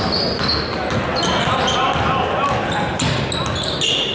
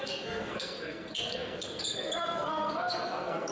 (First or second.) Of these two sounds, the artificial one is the second